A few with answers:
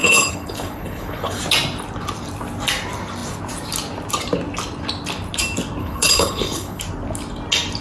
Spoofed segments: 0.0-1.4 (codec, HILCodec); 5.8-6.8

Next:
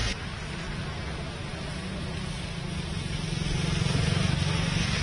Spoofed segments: none

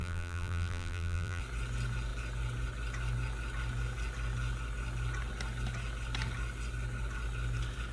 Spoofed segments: 0.0-1.4 (vocoder, BigVGAN v2)

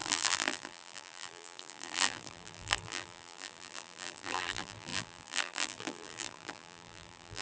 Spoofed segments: 0.0-7.4 (vocoder, BigVGAN v2)